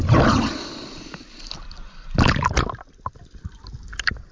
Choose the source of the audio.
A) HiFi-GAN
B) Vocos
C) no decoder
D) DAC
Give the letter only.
C